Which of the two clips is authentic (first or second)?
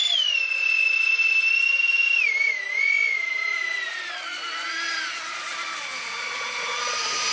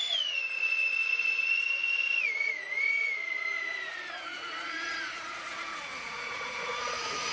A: first